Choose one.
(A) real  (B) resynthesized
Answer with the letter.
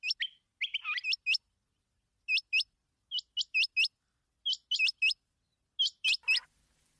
A